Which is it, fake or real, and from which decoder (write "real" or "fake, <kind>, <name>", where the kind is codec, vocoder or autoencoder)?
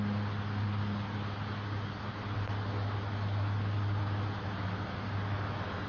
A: real